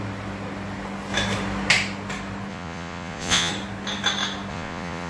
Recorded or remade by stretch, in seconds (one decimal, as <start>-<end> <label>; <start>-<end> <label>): 0.0-2.5 recorded; 2.5-3.5 remade; 3.5-4.5 recorded; 4.5-5.1 remade